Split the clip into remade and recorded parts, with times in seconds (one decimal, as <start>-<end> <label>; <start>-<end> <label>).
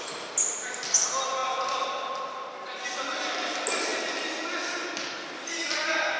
0.0-6.2 recorded